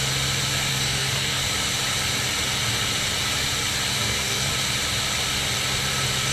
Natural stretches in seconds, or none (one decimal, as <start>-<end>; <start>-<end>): 0.0-0.7; 1.4-3.9; 4.5-6.3